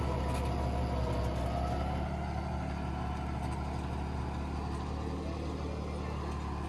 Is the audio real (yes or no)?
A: yes